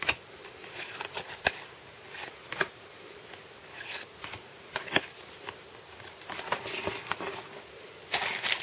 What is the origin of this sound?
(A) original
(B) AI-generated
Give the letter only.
A